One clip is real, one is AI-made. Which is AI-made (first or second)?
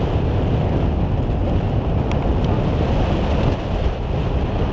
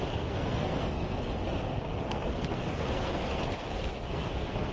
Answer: second